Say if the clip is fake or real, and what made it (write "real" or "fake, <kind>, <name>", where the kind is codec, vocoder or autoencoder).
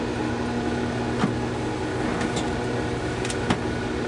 real